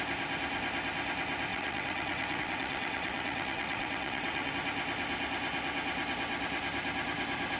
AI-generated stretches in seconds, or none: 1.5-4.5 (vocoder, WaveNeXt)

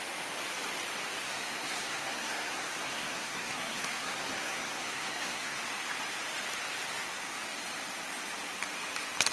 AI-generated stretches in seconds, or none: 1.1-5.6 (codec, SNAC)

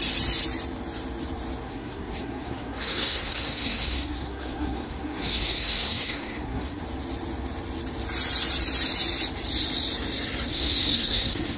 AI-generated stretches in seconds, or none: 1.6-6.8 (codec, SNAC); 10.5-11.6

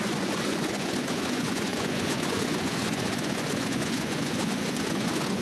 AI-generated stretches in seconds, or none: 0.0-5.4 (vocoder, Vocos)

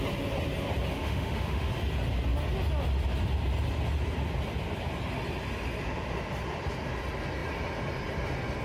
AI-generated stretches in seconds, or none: 0.9-1.7 (autoencoder, DAC-VAE)